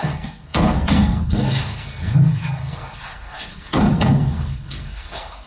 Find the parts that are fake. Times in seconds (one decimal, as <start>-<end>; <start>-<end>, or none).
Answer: 0.0-5.5